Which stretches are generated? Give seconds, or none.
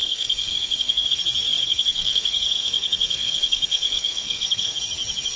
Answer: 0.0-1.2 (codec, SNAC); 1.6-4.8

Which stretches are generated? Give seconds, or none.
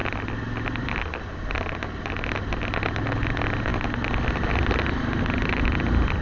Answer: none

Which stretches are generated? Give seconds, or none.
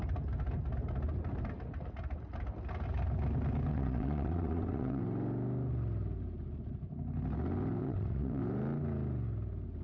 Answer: 3.7-5.0 (vocoder, WaveNeXt); 7.8-8.4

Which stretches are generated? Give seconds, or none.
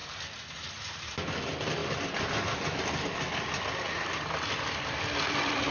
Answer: none